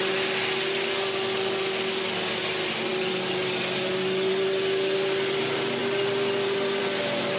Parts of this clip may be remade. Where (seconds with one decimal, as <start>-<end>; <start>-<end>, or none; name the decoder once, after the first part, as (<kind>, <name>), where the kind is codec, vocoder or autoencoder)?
none